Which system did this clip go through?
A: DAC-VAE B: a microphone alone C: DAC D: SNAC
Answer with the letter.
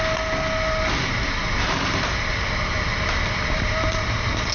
B